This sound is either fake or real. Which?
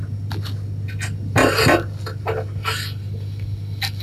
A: real